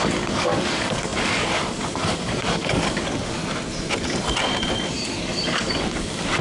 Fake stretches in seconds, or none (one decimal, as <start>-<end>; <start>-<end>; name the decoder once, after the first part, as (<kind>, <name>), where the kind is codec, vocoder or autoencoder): 0.0-3.4 (codec, DAC); 4.9-6.4